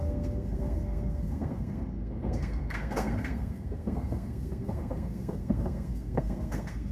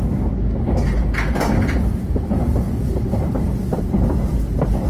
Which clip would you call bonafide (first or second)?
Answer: second